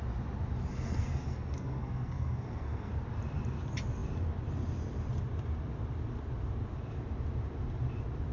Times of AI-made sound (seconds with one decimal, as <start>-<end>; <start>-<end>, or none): 0.7-2.9